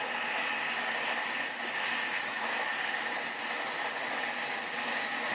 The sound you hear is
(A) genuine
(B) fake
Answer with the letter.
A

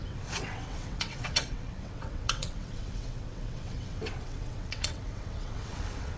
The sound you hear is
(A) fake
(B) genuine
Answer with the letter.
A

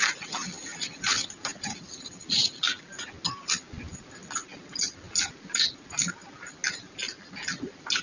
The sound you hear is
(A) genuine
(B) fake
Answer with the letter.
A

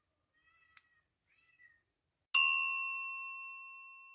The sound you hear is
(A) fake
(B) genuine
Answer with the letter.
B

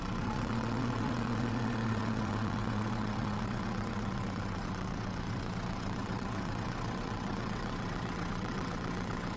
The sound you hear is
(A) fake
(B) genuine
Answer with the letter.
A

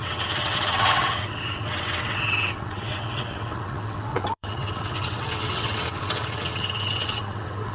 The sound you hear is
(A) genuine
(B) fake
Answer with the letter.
B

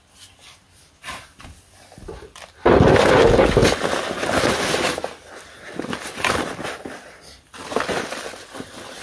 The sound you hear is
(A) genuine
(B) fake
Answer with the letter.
A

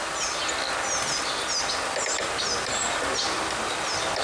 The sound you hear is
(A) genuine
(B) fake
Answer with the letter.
A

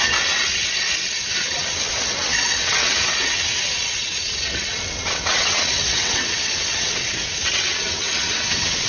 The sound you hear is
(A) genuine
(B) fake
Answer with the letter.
B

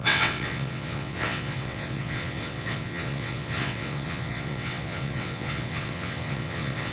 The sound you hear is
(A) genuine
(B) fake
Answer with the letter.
B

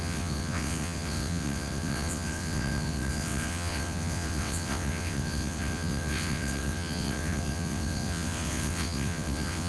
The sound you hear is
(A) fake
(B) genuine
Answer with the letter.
A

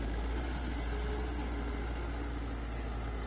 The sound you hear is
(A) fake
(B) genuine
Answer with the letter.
B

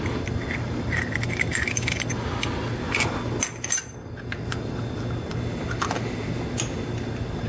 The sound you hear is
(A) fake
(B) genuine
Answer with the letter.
B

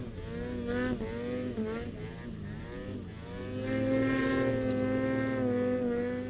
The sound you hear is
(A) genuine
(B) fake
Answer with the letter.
A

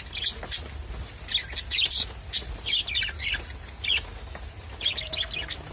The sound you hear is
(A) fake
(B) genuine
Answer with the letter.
B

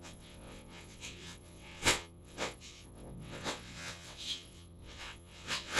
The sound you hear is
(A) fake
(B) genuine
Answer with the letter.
A